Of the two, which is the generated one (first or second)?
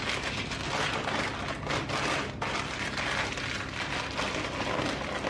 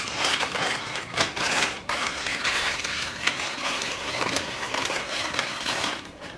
second